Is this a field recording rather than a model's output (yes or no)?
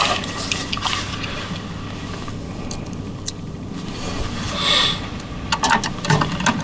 yes